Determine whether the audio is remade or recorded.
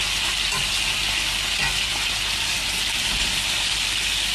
recorded